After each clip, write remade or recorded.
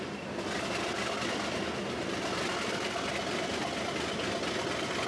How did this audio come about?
recorded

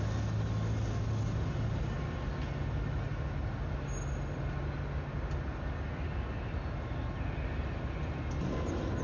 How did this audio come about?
recorded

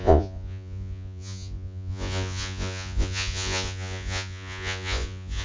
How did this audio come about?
remade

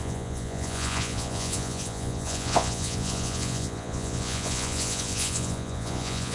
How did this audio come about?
remade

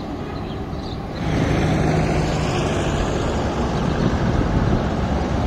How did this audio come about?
recorded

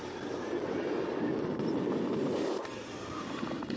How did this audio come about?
recorded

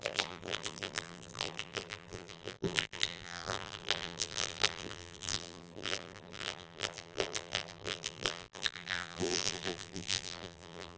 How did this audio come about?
remade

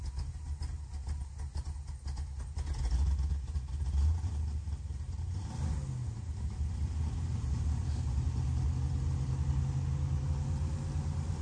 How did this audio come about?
recorded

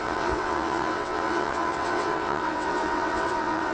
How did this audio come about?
remade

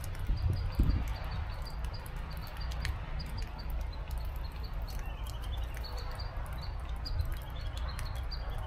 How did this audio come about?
remade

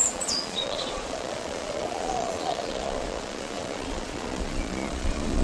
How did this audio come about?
remade